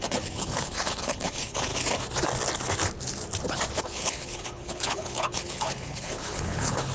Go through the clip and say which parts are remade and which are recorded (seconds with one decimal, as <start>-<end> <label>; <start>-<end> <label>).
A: 0.0-1.7 remade; 1.7-3.8 recorded; 3.8-6.9 remade